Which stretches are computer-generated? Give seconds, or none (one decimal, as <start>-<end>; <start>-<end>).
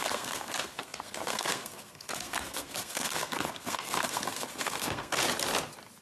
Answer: 0.0-5.2